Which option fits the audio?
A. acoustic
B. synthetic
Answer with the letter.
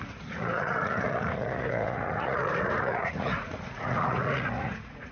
B